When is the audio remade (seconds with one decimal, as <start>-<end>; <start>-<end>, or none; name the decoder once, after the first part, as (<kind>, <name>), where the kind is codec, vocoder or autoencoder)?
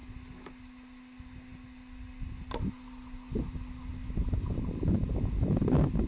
none